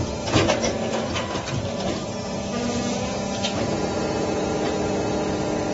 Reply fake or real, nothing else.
real